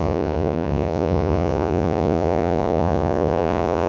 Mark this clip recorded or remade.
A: remade